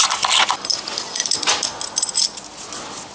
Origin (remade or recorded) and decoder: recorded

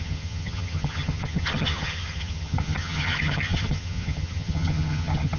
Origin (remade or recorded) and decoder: remade, vocoder, HiFi-GAN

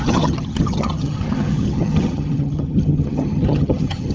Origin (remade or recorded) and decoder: remade, vocoder, HiFi-GAN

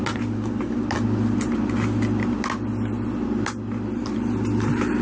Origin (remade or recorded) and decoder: recorded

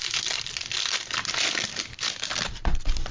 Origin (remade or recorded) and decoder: recorded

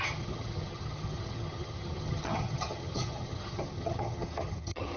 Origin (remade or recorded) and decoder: remade, vocoder, HiFi-GAN